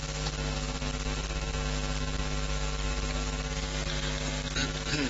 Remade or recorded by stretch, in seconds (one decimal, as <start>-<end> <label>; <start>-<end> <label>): 0.0-5.1 recorded